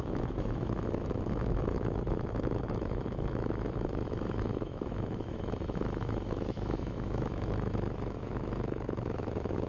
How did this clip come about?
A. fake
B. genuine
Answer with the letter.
A